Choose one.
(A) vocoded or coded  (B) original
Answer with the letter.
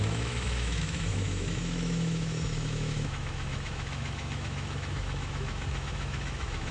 A